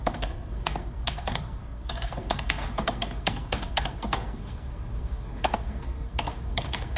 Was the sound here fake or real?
fake